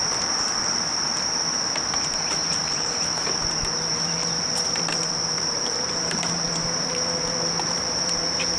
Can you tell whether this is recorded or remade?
remade